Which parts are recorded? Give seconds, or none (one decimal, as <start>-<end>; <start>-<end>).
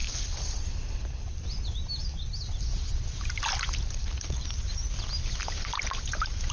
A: 0.0-6.5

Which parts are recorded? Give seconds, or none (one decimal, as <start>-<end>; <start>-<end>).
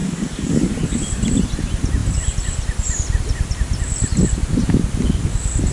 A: 0.7-5.7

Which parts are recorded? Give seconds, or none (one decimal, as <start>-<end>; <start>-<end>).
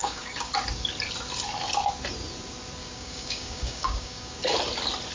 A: 0.5-2.8; 4.4-5.1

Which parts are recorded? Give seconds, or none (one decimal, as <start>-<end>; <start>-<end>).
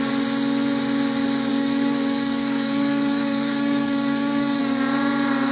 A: 0.0-1.5; 4.6-5.5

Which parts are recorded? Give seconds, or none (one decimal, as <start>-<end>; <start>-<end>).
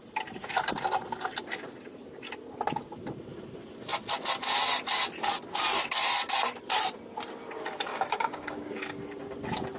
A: 0.0-7.9; 8.8-9.8